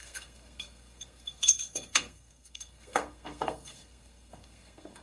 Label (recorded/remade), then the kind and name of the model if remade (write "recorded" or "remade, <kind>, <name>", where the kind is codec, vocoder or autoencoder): remade, codec, SNAC